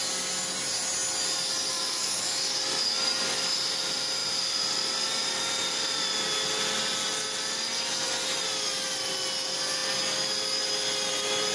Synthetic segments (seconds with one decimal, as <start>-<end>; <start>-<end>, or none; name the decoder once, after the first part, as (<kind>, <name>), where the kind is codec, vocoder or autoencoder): 1.7-2.6 (codec, DAC)